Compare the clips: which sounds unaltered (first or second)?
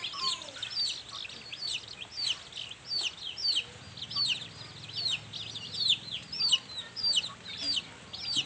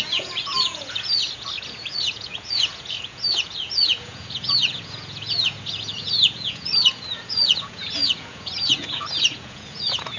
first